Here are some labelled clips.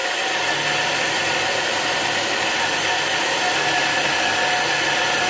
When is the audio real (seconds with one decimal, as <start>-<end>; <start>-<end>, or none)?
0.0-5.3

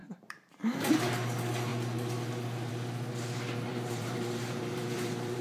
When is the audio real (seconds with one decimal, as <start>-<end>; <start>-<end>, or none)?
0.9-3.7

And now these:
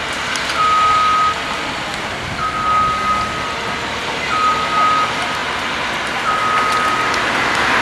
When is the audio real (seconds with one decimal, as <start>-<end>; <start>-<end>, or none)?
0.0-7.8

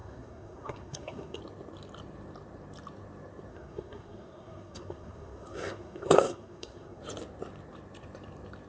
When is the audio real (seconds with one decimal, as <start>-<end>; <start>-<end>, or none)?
1.4-3.5; 7.0-8.7